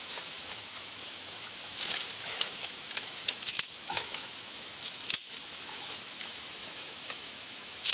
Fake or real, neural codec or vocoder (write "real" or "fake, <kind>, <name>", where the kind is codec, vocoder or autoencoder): fake, autoencoder, DAC-VAE